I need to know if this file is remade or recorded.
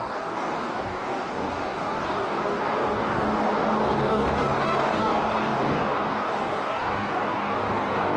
remade